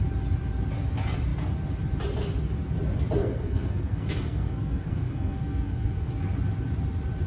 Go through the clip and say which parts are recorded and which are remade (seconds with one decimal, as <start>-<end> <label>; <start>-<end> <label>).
0.0-3.2 recorded; 3.2-6.1 remade; 6.1-7.3 recorded